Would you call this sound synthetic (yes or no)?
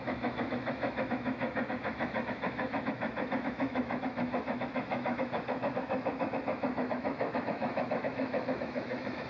yes